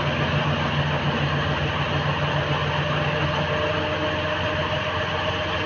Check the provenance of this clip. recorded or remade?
recorded